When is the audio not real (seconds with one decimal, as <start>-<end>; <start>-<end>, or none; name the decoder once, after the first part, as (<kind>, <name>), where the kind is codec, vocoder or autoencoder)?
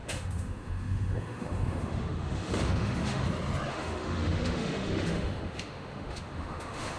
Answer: 0.0-3.2 (autoencoder, DAC-VAE); 3.7-7.0